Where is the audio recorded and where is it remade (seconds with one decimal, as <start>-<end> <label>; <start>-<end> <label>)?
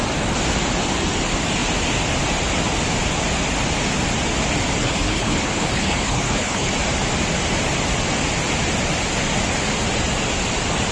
0.0-4.8 recorded; 4.8-6.7 remade; 6.7-10.9 recorded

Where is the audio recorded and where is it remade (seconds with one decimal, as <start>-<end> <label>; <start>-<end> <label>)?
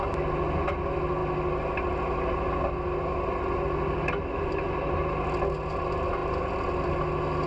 0.0-7.5 recorded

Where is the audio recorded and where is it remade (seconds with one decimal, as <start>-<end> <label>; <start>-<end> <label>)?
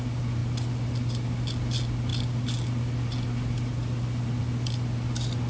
0.0-5.5 recorded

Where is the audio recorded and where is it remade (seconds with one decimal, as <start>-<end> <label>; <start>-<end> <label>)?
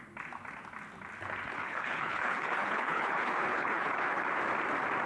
0.0-1.6 recorded; 1.6-4.2 remade; 4.2-5.1 recorded